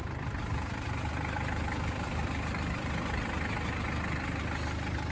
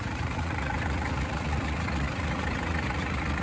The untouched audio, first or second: first